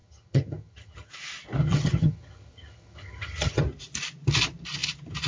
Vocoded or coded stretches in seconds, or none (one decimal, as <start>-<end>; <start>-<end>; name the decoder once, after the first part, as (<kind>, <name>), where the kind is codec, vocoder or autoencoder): 0.0-1.1 (vocoder, HiFi-GAN); 1.6-3.6